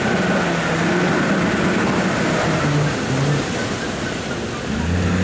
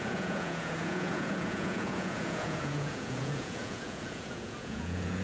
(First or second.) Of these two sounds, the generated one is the second